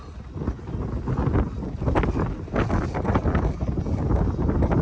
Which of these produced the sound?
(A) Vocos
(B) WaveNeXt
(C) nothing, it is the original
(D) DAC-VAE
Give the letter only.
C